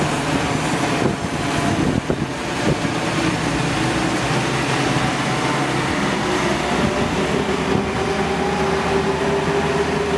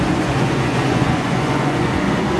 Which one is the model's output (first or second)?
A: second